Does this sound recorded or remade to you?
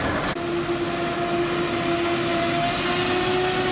recorded